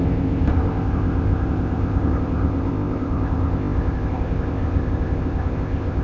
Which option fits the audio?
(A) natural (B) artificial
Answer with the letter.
B